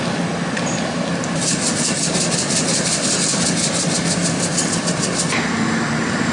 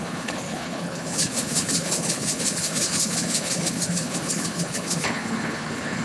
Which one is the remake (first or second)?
second